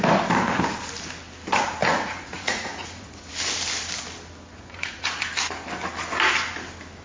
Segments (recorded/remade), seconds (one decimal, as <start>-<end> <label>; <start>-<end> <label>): 0.0-1.8 recorded; 1.8-3.3 remade; 3.3-4.5 recorded; 4.5-5.2 remade; 5.2-7.0 recorded